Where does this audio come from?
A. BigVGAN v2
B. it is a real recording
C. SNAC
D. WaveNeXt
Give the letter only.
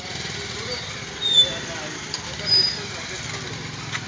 B